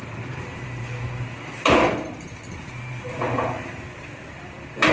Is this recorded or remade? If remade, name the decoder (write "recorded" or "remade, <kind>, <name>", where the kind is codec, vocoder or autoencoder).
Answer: remade, vocoder, BigVGAN v2